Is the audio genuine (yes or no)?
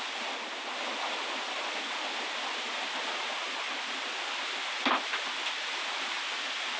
yes